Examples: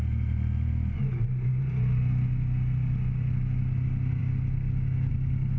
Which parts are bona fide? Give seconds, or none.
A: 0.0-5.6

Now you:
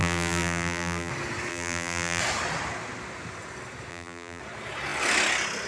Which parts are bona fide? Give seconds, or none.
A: 1.1-1.5; 2.2-3.9; 4.4-5.7

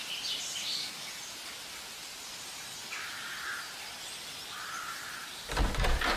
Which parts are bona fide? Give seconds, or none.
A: 0.0-0.6; 1.1-6.2

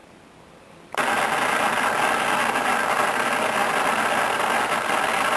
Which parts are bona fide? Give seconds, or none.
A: 0.0-5.4

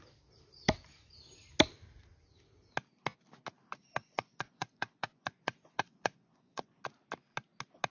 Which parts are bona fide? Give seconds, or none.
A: 0.0-4.0; 6.8-7.9